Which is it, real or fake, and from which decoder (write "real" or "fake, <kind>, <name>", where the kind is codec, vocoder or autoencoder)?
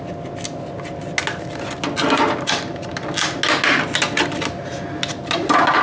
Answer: real